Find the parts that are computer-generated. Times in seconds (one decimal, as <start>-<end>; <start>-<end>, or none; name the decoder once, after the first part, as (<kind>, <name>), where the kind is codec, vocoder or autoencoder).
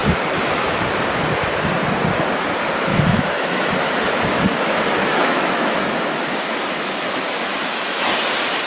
2.9-8.1 (autoencoder, DAC-VAE)